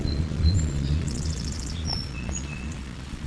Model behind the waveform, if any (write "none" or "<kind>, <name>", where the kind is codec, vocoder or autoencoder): vocoder, Vocos